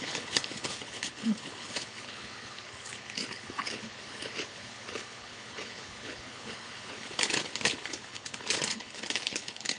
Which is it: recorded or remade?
remade